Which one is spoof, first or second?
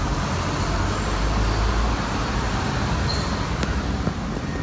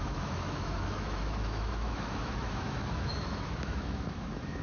second